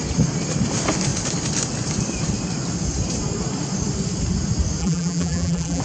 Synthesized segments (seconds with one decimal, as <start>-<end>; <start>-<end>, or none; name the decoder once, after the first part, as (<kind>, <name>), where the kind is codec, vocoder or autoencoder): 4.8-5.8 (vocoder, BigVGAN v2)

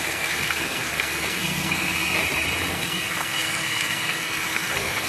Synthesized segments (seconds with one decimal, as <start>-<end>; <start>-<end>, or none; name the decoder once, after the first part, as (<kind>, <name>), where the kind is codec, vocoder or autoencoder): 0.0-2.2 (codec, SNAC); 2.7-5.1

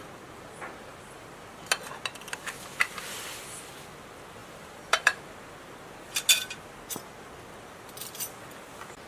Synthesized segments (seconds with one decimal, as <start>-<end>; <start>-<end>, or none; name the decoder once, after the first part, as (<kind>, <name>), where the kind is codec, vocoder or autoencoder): 0.9-1.6 (vocoder, BigVGAN v2); 3.1-3.7; 4.4-5.2

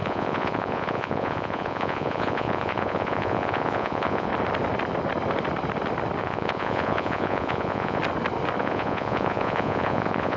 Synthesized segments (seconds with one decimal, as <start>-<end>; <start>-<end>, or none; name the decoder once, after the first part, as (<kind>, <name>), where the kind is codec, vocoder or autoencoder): 0.0-4.3 (vocoder, Vocos); 6.2-8.0; 8.6-10.4

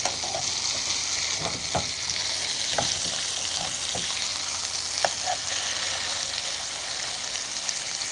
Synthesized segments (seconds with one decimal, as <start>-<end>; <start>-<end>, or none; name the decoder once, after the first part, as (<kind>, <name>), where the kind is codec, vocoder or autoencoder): 4.3-5.1 (vocoder, BigVGAN v2)

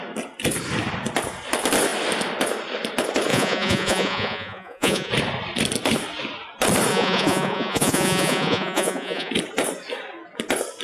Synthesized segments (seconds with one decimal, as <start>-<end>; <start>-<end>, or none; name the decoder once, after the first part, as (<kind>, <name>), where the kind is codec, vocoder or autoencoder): 3.3-5.1 (vocoder, Vocos); 6.9-9.3

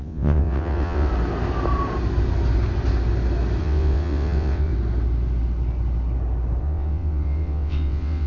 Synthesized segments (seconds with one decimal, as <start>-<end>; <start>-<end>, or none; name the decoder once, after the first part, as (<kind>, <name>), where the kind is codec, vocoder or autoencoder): 0.0-1.1 (vocoder, WaveNeXt); 3.6-4.7; 6.6-8.3